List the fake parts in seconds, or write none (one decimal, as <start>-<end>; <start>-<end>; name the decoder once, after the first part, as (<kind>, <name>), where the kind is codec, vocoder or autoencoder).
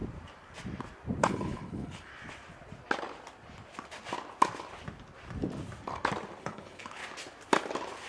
1.2-2.1 (codec, HILCodec); 6.4-7.0